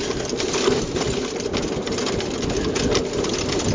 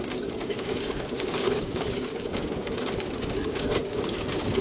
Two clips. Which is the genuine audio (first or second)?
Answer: first